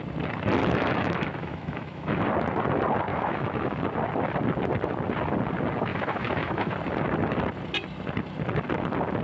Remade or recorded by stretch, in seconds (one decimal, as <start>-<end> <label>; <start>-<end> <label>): 0.0-0.6 recorded; 0.6-2.2 remade; 2.2-3.1 recorded; 3.1-3.8 remade; 3.8-5.9 recorded; 5.9-6.7 remade; 6.7-9.2 recorded